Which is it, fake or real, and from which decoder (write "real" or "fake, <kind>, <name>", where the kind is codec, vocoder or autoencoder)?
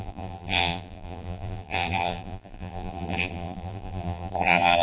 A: fake, vocoder, BigVGAN v2